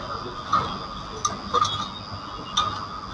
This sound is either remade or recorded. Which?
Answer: recorded